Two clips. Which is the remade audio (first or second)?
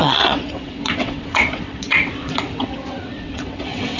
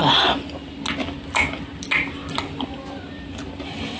first